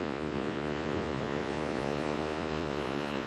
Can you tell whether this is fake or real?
fake